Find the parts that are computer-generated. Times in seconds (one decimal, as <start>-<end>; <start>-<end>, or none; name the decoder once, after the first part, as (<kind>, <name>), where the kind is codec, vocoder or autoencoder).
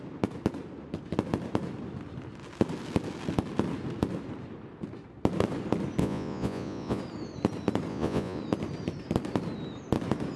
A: 6.0-7.0 (vocoder, Vocos); 7.9-8.4